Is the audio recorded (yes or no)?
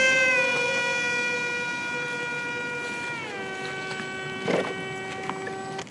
yes